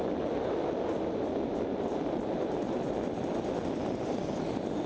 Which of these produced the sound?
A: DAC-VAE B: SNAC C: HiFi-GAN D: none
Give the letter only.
D